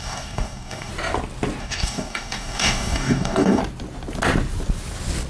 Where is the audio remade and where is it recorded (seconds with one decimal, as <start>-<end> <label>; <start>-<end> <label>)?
0.0-0.9 remade; 0.9-1.6 recorded; 1.6-3.6 remade; 3.6-5.3 recorded